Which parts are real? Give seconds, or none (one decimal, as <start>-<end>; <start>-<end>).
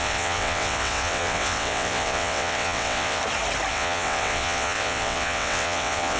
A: 3.2-3.7